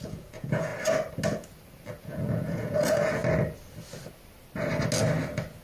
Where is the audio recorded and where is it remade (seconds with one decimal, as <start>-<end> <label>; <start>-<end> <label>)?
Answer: 0.0-0.7 remade; 0.7-2.0 recorded; 2.0-3.2 remade; 3.2-5.6 recorded

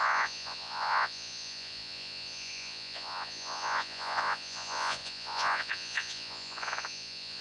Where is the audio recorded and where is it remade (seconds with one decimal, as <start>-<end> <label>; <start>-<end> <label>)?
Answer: 0.0-7.4 remade

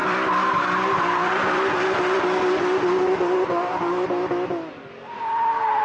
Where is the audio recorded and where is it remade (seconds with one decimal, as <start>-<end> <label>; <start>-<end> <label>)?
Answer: 0.0-5.8 remade